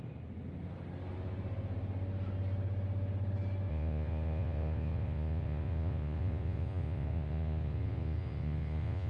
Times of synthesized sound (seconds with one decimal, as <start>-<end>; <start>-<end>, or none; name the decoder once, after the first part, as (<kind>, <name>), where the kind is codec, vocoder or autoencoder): 3.7-9.1 (vocoder, Vocos)